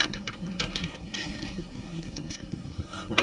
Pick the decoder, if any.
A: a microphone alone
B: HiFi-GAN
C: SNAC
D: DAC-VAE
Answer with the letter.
C